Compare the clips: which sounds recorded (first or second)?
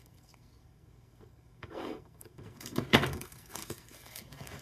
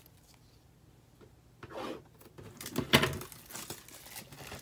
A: second